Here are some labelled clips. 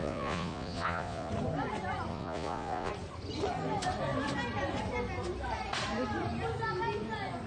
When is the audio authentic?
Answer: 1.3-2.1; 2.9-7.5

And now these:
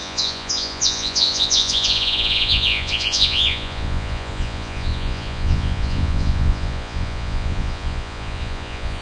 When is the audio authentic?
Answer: none

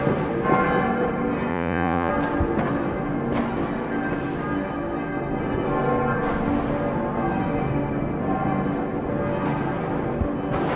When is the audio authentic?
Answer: 0.0-1.5; 2.1-10.8

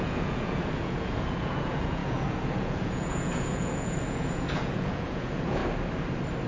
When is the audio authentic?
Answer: 5.6-6.5

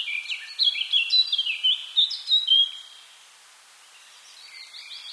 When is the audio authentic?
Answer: 0.0-5.1

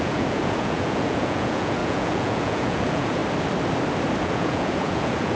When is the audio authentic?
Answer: 3.2-4.2

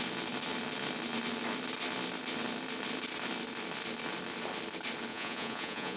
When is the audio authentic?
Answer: 0.0-5.1